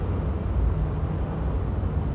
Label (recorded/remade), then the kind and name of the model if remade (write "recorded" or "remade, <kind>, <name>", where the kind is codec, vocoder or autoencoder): recorded